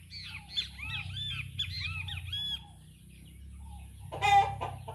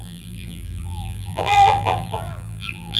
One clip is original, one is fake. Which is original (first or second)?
first